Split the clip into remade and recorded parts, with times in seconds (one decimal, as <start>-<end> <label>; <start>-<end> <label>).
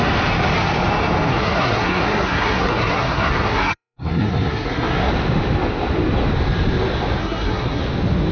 0.0-1.3 recorded; 1.3-5.1 remade; 5.1-7.2 recorded; 7.2-7.8 remade; 7.8-8.3 recorded